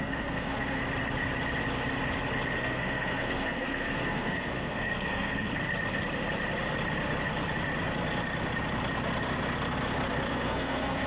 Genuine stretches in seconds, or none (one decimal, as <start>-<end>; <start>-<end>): 0.8-2.6; 5.5-10.3